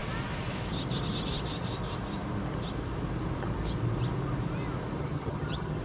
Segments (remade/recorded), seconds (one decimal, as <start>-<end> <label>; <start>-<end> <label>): 0.0-5.0 recorded; 5.0-5.8 remade